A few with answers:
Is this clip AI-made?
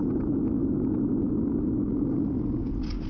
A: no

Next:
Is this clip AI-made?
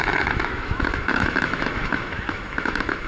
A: yes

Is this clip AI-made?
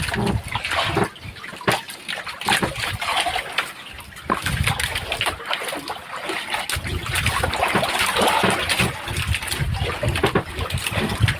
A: no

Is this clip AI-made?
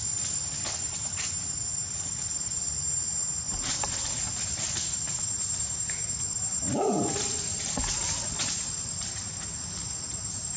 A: yes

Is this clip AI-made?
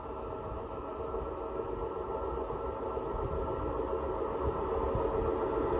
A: no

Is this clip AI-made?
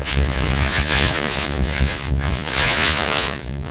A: yes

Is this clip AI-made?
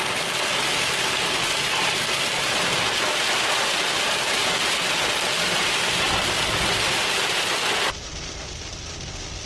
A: no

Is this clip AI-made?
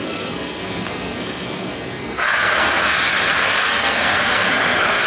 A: yes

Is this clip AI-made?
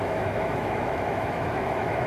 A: yes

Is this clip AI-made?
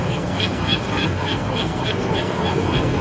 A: yes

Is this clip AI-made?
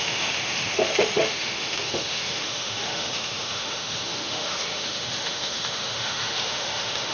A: yes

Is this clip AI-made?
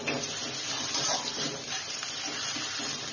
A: no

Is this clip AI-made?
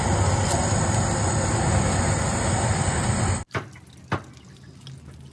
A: no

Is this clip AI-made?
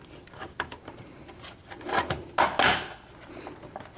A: no